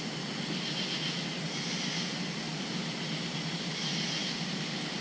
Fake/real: real